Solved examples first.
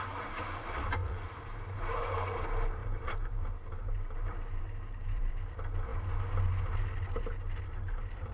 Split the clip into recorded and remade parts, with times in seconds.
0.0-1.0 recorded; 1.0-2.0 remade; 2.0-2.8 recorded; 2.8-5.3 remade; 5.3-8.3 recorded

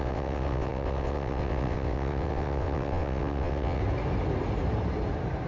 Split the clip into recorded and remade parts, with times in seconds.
0.0-3.8 remade; 3.8-5.5 recorded

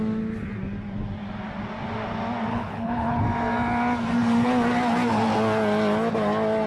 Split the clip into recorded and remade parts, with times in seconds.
0.0-2.5 recorded; 2.5-3.2 remade; 3.2-6.7 recorded

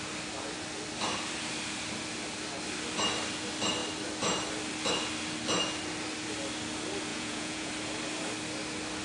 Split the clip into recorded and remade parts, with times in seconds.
0.0-7.1 recorded; 7.1-7.7 remade; 7.7-9.0 recorded

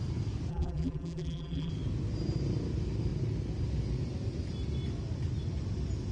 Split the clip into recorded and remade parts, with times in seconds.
0.0-0.5 recorded; 0.5-1.7 remade; 1.7-6.1 recorded

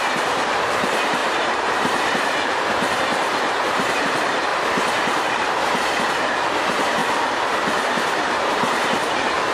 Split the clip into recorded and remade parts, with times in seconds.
0.0-9.5 remade

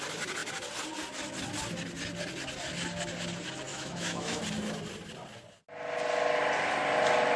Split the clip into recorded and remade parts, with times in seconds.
0.0-3.7 recorded; 3.7-4.4 remade; 4.4-7.4 recorded

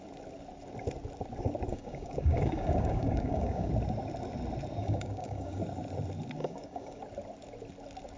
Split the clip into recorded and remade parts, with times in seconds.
0.0-1.7 recorded; 1.7-3.7 remade; 3.7-4.8 recorded; 4.8-5.6 remade; 5.6-6.4 recorded; 6.4-7.0 remade; 7.0-8.2 recorded